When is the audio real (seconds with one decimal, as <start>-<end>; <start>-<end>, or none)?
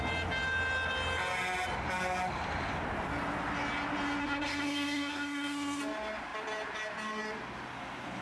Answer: 0.0-4.2; 5.8-8.2